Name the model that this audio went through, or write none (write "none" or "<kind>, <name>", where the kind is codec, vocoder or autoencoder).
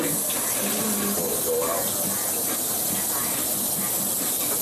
none